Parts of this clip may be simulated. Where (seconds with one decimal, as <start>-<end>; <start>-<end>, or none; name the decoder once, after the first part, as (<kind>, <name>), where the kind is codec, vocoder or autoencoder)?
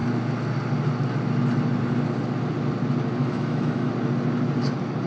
3.2-3.9 (autoencoder, DAC-VAE)